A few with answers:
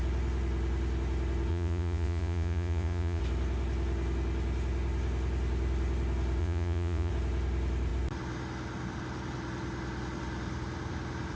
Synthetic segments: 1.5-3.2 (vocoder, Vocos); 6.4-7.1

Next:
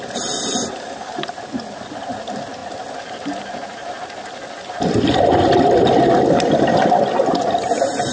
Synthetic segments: none

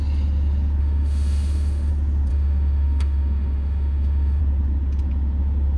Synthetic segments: 0.8-1.9 (autoencoder, DAC-VAE); 2.3-4.4

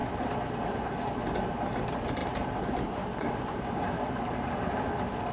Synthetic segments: none

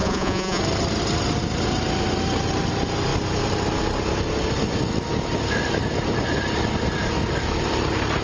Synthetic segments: 0.0-0.6 (vocoder, Vocos)

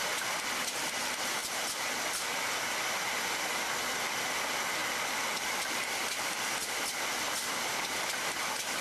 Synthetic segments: 1.4-1.9 (vocoder, BigVGAN v2); 4.8-8.8